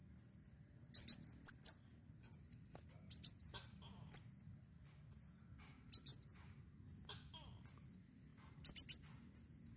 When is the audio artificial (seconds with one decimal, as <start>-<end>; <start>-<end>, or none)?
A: none